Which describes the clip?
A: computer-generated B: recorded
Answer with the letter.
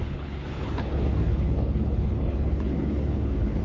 A